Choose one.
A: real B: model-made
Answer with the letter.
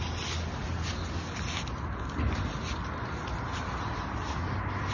A